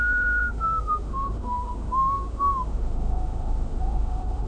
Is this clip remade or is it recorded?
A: remade